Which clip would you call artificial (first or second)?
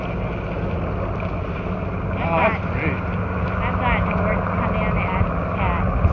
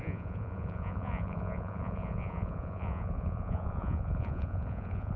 second